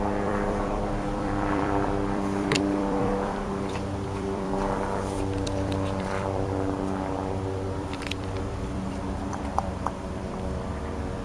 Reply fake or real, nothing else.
fake